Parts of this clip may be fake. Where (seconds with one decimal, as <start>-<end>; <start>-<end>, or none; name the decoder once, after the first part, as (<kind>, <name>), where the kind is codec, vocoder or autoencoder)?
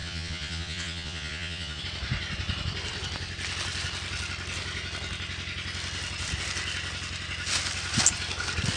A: 0.0-1.8 (vocoder, Vocos)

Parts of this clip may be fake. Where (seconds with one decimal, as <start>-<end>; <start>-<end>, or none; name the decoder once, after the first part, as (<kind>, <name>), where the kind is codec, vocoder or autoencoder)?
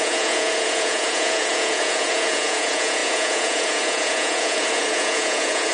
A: 0.0-5.7 (vocoder, Vocos)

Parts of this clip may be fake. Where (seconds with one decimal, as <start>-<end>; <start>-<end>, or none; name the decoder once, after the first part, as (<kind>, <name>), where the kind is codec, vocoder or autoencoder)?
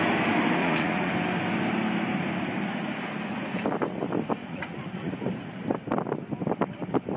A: 0.6-1.1 (vocoder, Vocos); 4.4-5.1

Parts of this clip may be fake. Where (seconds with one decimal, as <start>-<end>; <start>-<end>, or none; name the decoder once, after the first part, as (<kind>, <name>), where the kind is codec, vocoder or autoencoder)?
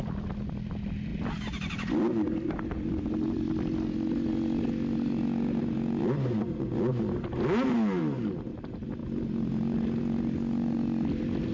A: none